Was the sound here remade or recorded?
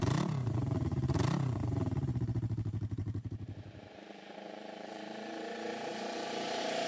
remade